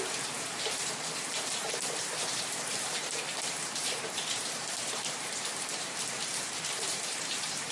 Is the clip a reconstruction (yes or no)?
yes